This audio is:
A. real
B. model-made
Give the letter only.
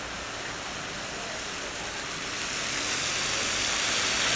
A